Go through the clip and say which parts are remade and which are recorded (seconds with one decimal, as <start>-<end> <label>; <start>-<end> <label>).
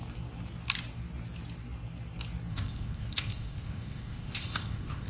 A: 0.0-2.5 recorded; 2.5-5.1 remade